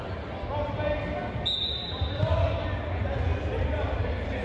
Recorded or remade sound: recorded